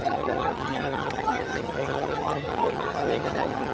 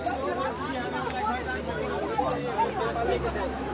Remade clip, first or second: first